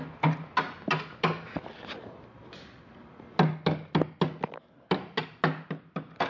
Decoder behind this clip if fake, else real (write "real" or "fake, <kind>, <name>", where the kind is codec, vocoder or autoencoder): real